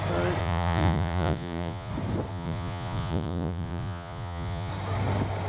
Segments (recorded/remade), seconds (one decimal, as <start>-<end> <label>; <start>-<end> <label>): 0.0-0.4 recorded; 0.4-1.9 remade; 1.9-2.3 recorded; 2.3-4.7 remade; 4.7-5.5 recorded